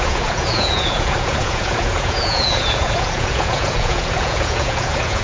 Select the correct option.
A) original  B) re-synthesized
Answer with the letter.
B